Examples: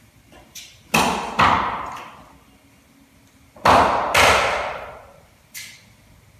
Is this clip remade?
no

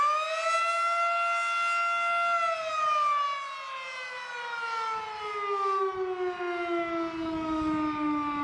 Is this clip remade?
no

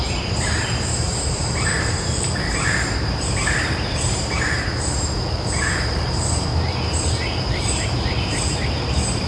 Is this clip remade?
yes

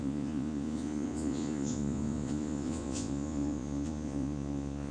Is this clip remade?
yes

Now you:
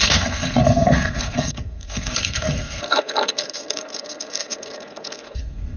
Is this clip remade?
yes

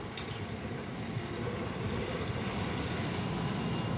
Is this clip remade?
no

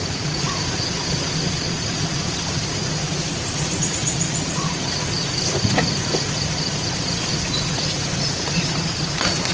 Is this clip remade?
yes